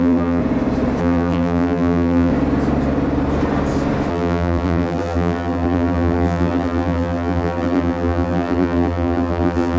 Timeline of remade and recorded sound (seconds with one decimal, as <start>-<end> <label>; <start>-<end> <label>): 0.0-0.4 remade; 0.4-1.0 recorded; 1.0-2.3 remade; 2.3-4.1 recorded; 4.1-9.8 remade